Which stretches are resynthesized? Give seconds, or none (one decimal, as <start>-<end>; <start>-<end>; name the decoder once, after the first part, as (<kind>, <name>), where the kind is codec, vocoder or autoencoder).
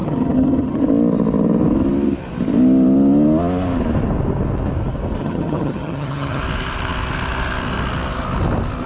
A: 0.0-0.8 (vocoder, HiFi-GAN); 5.2-6.4